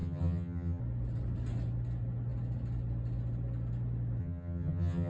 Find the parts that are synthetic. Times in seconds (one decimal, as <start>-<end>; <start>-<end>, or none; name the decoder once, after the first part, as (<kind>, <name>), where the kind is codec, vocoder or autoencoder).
0.0-0.8 (vocoder, HiFi-GAN); 4.2-5.1